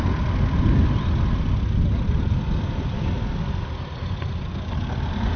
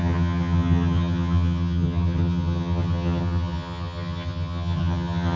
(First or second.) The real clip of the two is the first